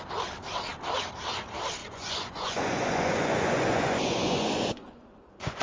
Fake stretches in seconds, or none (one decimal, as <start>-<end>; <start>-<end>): 1.8-5.6